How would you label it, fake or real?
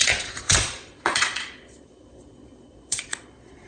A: fake